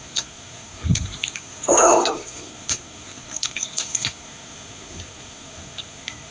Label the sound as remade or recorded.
remade